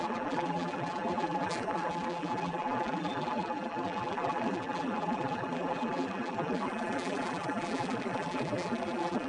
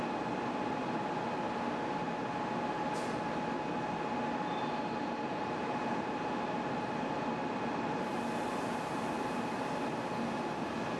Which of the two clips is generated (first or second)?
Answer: first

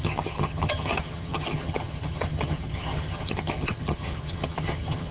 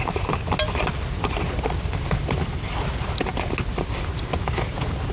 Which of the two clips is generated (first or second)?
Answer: first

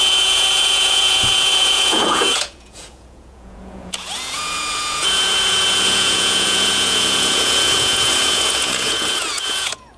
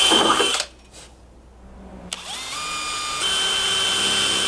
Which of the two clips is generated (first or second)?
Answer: first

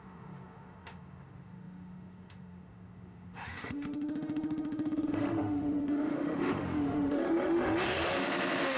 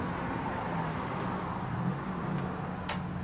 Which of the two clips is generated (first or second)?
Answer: first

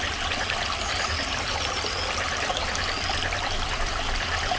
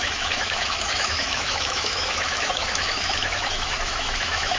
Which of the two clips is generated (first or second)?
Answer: second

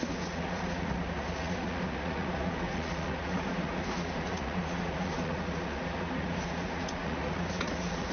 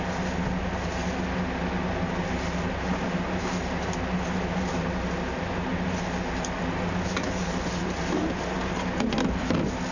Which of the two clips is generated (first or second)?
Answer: first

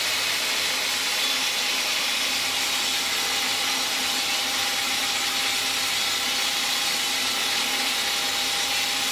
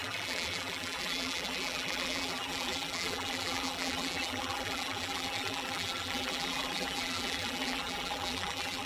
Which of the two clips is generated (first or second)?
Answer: second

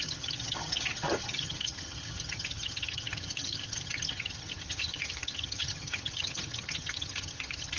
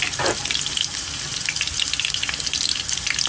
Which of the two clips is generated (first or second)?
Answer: first